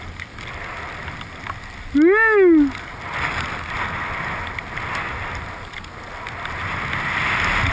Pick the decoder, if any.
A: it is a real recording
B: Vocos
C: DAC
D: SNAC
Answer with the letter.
A